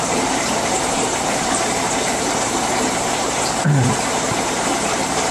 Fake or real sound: fake